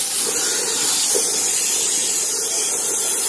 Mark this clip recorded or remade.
recorded